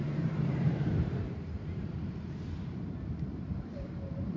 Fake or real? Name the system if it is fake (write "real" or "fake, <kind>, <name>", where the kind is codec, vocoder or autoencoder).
fake, vocoder, BigVGAN v2